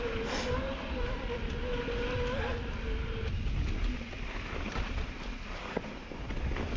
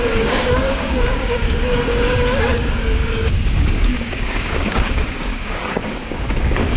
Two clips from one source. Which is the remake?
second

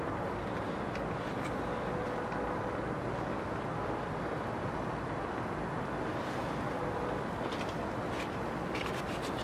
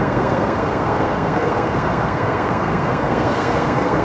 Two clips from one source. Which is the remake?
second